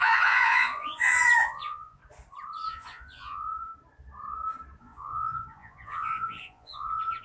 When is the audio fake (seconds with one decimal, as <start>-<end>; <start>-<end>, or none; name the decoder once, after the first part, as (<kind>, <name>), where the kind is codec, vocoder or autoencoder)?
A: 0.0-2.0 (vocoder, Vocos); 2.7-3.7; 4.8-7.2